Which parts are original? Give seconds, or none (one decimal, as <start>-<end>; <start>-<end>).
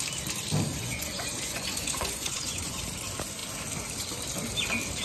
0.0-0.7; 2.8-5.0